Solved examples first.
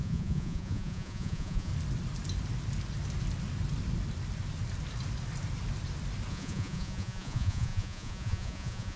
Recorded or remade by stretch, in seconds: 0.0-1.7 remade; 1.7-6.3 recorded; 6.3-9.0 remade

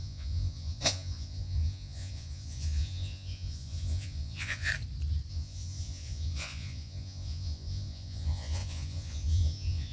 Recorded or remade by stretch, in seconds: 0.0-4.7 remade; 4.7-5.3 recorded; 5.3-9.9 remade

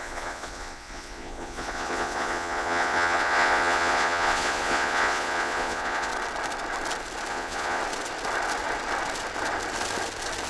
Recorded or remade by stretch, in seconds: 0.0-6.1 remade; 6.1-7.3 recorded; 7.3-7.8 remade; 7.8-10.5 recorded

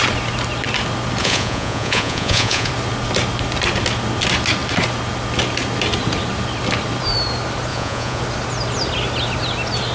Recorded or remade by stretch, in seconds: 0.0-1.2 recorded; 1.2-2.7 remade; 2.7-7.7 recorded; 7.7-8.2 remade; 8.2-9.9 recorded

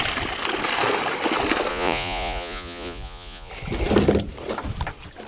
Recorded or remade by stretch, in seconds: 0.0-1.7 recorded; 1.7-3.5 remade; 3.5-5.3 recorded

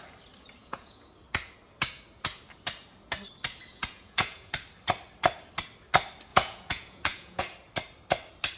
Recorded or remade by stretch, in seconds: 0.0-0.6 recorded; 0.6-1.1 remade; 1.1-3.7 recorded; 3.7-4.5 remade; 4.5-6.3 recorded; 6.3-7.4 remade; 7.4-8.6 recorded

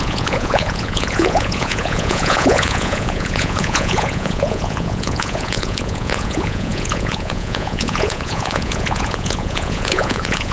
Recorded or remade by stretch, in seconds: 0.0-10.5 remade

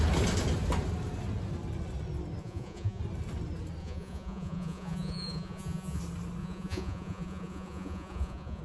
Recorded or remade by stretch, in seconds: 0.0-2.4 recorded; 2.4-3.0 remade; 3.0-3.8 recorded; 3.8-6.0 remade; 6.0-6.4 recorded; 6.4-8.6 remade